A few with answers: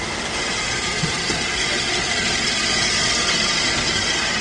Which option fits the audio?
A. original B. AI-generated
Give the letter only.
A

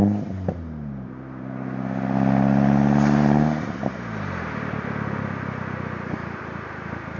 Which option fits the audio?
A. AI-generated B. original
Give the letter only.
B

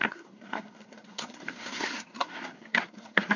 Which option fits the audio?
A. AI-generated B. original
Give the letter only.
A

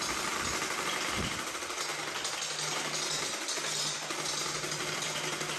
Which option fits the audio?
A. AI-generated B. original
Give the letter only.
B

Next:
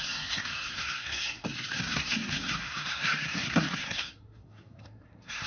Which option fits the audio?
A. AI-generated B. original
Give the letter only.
A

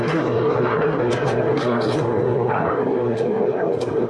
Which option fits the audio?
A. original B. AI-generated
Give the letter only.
B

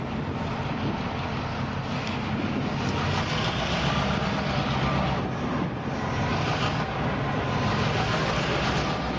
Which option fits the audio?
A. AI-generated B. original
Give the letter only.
B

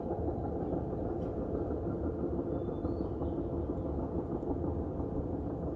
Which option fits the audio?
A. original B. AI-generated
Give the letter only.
A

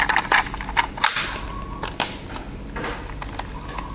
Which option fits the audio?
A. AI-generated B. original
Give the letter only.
B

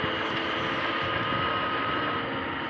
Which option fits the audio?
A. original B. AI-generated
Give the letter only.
A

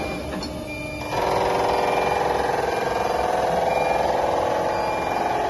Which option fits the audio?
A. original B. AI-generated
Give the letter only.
A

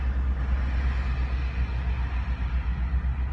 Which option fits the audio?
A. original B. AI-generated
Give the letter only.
A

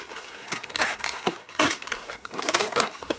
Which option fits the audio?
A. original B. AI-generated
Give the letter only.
B